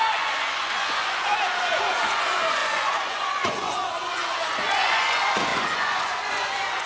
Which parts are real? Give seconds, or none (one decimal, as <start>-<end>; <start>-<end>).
none